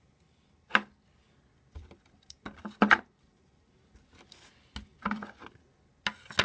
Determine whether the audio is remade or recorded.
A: recorded